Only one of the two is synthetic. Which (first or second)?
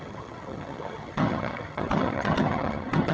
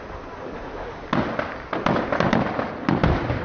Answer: first